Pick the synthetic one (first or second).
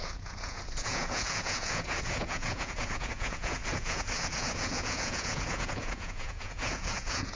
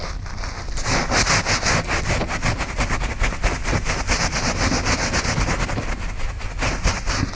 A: first